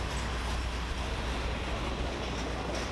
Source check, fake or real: real